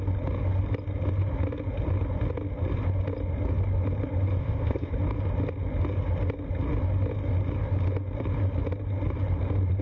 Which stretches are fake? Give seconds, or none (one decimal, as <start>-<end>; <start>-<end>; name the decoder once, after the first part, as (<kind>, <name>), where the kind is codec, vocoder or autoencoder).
4.4-4.9 (codec, ZipCodec)